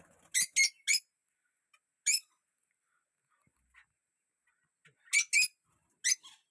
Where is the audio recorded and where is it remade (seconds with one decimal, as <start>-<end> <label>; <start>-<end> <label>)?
0.0-6.5 recorded